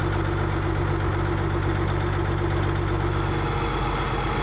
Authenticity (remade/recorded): recorded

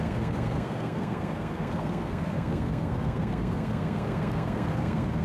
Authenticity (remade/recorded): remade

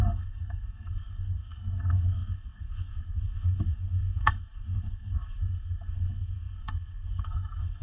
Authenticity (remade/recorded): remade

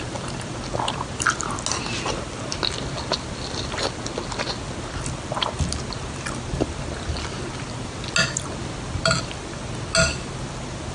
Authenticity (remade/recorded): recorded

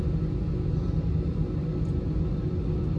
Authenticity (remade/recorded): recorded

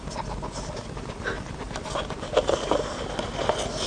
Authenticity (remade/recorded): recorded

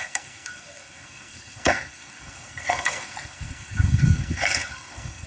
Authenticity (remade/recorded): remade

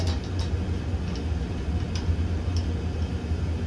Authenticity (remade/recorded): recorded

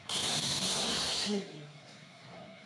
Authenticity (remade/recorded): remade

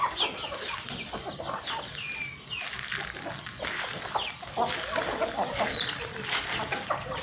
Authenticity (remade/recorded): recorded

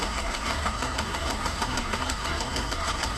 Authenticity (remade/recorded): remade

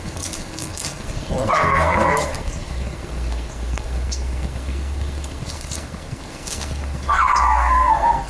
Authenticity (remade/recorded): remade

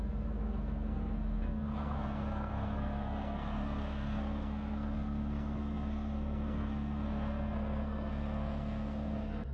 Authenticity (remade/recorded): remade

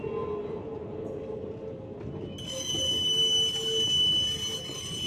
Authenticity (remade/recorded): recorded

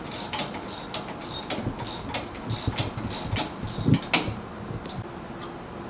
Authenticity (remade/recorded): recorded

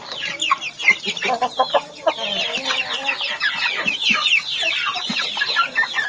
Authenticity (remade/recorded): recorded